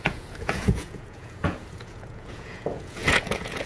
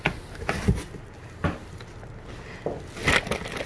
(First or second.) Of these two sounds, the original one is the second